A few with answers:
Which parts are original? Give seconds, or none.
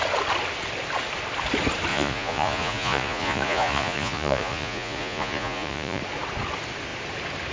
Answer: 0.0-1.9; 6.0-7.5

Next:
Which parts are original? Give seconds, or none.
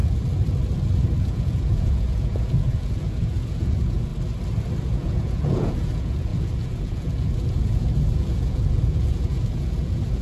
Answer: 0.0-1.2; 4.1-4.8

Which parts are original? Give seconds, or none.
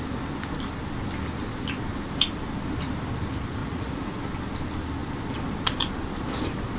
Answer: 0.0-3.6; 4.2-6.8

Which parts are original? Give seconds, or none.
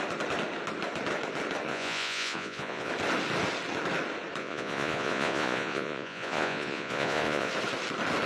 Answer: 0.0-1.7; 2.9-4.4; 7.5-8.3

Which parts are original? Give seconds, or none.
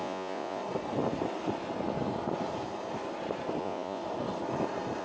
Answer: 0.6-3.6; 4.0-5.0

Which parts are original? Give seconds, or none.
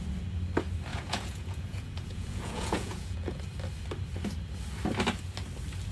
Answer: 0.0-0.9; 3.4-5.9